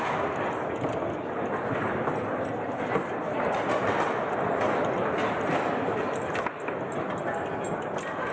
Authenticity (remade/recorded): recorded